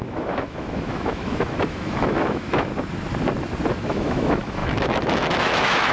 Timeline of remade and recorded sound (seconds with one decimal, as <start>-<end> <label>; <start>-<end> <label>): 0.0-2.7 remade; 2.7-3.7 recorded; 3.7-5.9 remade